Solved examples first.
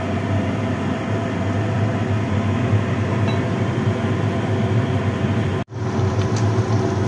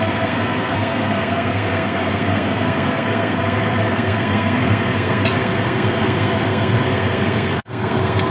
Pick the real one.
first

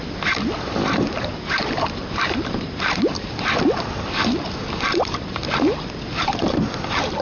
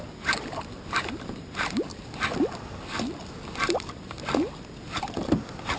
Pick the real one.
second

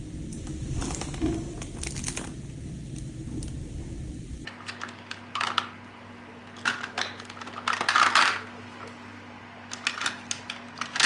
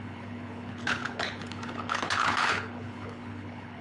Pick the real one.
first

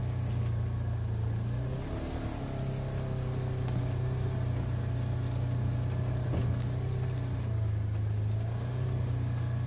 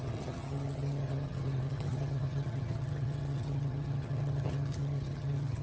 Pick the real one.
first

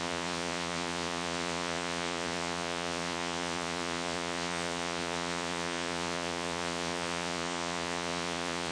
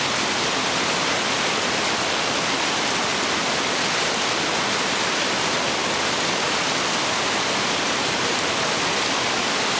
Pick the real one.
second